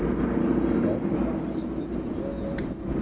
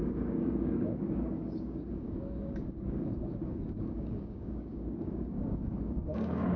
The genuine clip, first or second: first